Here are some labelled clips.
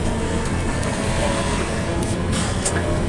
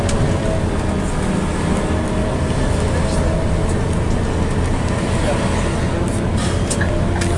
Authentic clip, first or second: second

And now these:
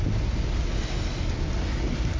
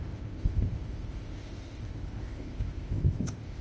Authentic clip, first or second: first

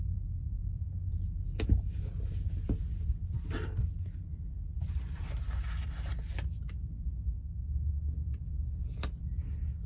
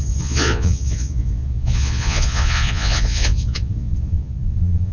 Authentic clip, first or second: first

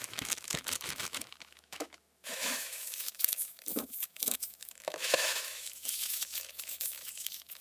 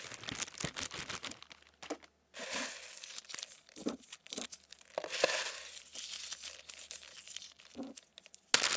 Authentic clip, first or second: second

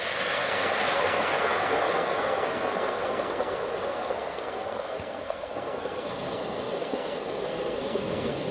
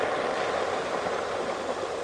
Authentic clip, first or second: second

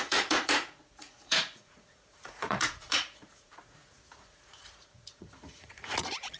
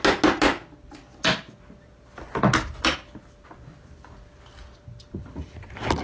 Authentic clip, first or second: second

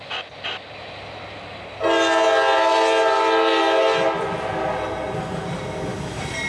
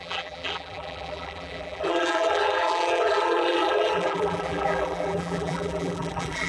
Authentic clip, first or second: first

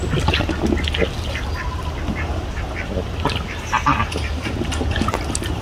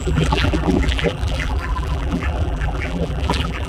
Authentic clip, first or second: first